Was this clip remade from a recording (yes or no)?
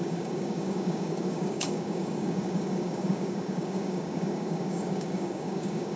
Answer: yes